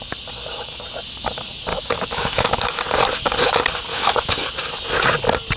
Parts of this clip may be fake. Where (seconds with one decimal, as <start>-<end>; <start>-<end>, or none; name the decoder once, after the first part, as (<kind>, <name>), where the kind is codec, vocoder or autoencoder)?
1.7-2.6 (autoencoder, DAC-VAE); 3.9-4.5